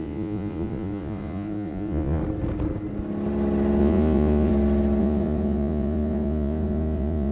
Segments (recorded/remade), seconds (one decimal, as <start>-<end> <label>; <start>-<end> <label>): 0.0-2.2 remade; 2.2-3.8 recorded; 3.8-4.5 remade; 4.5-5.0 recorded; 5.0-7.3 remade